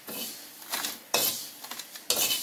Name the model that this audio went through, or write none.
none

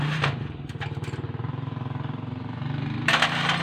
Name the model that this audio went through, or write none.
vocoder, BigVGAN v2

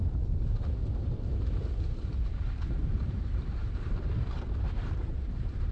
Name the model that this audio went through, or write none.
vocoder, BigVGAN v2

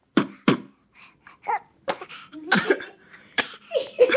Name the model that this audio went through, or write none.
vocoder, BigVGAN v2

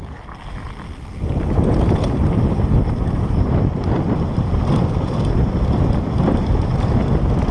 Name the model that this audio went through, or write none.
none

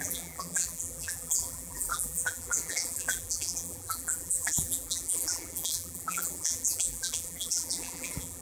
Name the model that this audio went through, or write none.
vocoder, BigVGAN v2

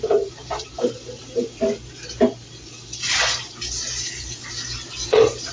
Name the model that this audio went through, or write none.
vocoder, BigVGAN v2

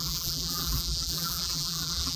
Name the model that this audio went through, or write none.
vocoder, BigVGAN v2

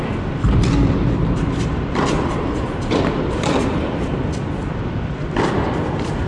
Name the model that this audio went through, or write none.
vocoder, BigVGAN v2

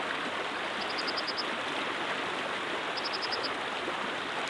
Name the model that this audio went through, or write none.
none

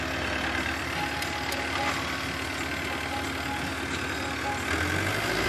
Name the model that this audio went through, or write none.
none